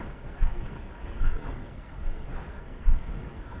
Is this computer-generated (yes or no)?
yes